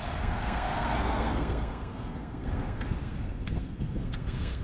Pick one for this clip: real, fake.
fake